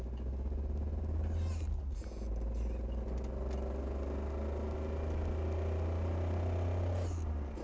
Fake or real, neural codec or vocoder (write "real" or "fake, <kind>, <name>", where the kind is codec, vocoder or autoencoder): real